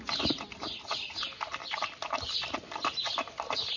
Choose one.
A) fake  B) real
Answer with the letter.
B